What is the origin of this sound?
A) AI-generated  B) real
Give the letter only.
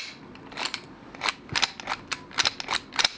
B